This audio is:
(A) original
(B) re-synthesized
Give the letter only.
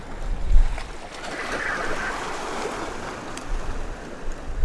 A